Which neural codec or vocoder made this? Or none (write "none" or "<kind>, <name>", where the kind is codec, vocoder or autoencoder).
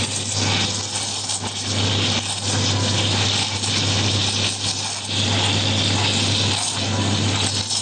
none